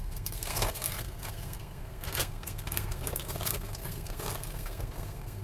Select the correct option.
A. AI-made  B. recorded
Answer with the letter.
A